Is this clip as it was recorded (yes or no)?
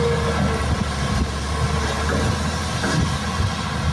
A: yes